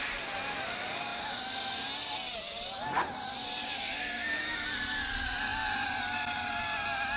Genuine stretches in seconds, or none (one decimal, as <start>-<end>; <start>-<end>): 0.0-3.6; 4.4-7.2